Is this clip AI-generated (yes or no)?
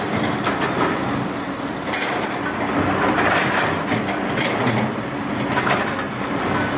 no